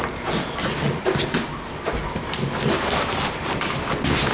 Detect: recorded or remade recorded